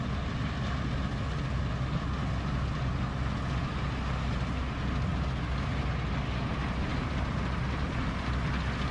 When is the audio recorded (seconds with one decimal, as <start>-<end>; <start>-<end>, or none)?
0.0-6.9; 8.1-8.9